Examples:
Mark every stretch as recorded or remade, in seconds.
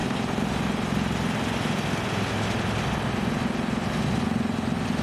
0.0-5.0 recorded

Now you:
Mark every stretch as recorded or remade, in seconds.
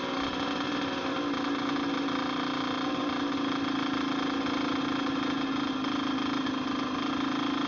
0.0-7.7 recorded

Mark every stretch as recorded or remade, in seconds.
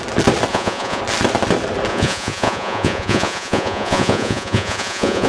0.0-0.5 recorded; 0.5-1.0 remade; 1.0-1.9 recorded; 1.9-5.3 remade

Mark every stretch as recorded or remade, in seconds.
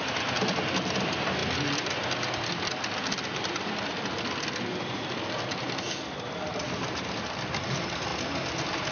0.0-8.9 recorded